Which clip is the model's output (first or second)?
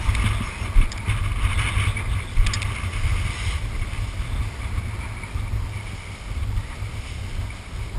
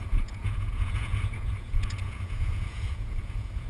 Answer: second